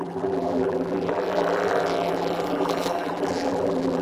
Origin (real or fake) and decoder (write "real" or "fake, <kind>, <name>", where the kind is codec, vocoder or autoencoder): fake, vocoder, BigVGAN v2